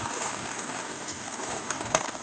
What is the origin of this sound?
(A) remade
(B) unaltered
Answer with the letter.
A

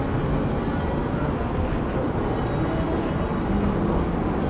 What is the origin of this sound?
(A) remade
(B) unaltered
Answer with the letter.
B